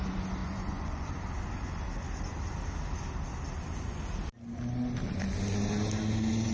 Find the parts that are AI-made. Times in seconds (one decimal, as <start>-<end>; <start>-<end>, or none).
0.4-1.1